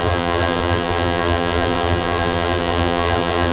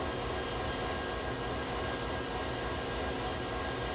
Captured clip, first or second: second